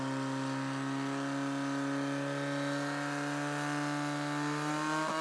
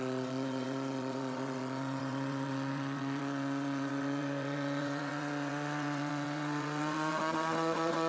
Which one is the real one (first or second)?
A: first